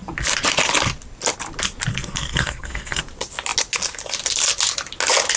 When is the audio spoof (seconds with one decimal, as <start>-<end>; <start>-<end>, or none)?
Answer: 1.9-3.0